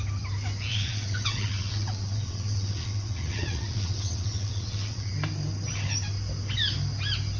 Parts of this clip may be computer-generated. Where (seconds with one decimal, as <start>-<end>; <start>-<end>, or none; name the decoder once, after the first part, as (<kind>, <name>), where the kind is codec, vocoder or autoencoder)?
0.7-5.1 (vocoder, WaveNeXt)